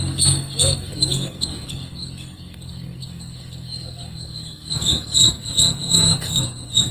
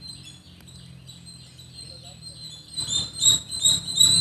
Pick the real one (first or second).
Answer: second